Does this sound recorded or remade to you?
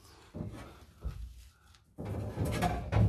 recorded